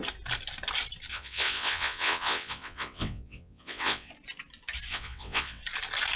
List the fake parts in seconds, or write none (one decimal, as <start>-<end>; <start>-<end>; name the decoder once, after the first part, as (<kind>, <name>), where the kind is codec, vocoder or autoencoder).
1.1-4.1 (vocoder, WaveNeXt); 4.9-5.6